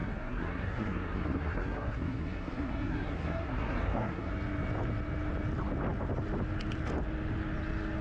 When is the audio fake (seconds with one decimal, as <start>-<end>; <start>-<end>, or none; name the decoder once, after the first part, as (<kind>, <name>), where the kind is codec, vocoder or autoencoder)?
0.0-4.3 (codec, SNAC)